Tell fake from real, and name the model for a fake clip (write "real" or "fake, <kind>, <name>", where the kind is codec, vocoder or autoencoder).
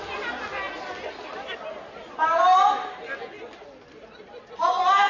real